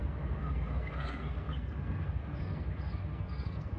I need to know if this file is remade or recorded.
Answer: remade